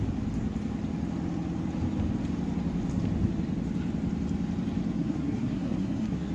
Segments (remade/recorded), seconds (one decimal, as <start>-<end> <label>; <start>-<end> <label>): 0.0-5.0 recorded; 5.0-6.3 remade